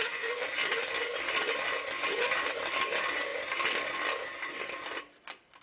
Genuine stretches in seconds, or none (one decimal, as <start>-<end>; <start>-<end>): 0.0-5.6